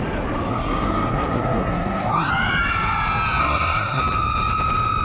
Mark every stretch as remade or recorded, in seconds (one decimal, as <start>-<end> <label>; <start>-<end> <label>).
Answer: 0.0-0.5 recorded; 0.5-2.3 remade; 2.3-3.4 recorded; 3.4-4.0 remade; 4.0-5.0 recorded